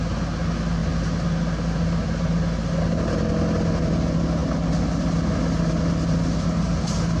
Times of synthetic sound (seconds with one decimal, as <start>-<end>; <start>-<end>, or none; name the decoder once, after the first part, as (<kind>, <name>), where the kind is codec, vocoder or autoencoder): none